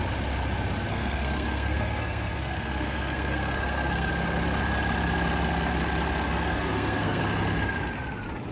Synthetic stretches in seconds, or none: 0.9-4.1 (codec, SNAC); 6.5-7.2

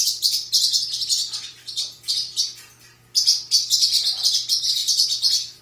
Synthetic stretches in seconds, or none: 1.5-2.0 (vocoder, BigVGAN v2)

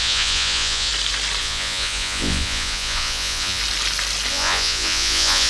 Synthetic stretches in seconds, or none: 0.0-0.9 (vocoder, Vocos); 1.4-3.6; 4.3-5.5